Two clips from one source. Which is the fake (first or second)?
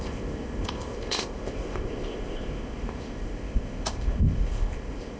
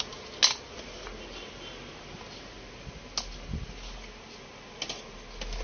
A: first